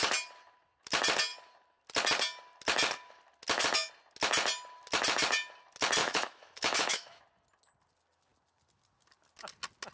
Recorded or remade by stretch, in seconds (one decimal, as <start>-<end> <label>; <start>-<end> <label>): 0.0-6.0 recorded; 6.0-7.2 remade; 7.2-9.9 recorded